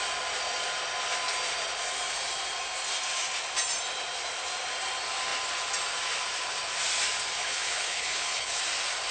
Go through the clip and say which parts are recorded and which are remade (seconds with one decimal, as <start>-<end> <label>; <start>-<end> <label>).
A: 0.0-7.4 recorded; 7.4-8.6 remade; 8.6-9.1 recorded